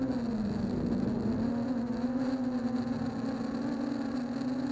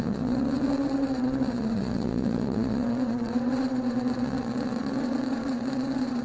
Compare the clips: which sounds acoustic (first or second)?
first